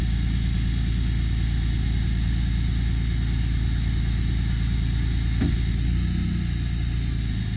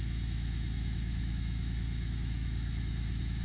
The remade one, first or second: second